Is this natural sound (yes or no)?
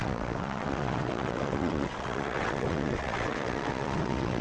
no